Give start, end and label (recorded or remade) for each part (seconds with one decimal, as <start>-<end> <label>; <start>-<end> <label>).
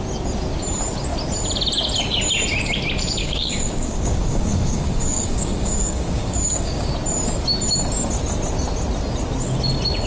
0.0-3.2 recorded; 3.2-6.9 remade; 6.9-10.1 recorded